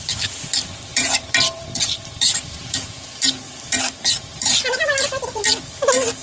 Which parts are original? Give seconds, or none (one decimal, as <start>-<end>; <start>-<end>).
0.0-0.9; 4.6-6.2

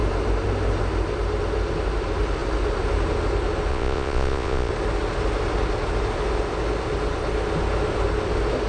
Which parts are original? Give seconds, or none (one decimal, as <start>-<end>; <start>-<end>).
0.0-3.7; 4.7-8.7

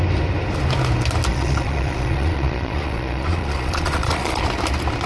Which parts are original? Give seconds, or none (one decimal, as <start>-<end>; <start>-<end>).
0.0-1.3; 4.4-5.1

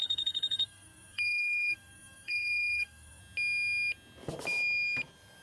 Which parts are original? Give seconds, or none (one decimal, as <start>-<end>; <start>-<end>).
3.2-5.4